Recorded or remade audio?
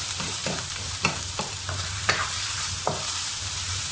remade